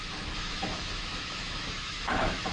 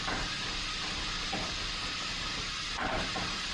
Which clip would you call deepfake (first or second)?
first